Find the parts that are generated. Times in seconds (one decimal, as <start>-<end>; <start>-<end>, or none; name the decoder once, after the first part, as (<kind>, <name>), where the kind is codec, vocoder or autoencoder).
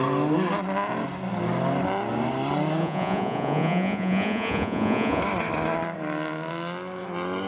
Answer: 2.8-5.2 (vocoder, Vocos)